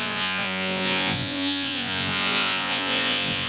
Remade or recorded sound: remade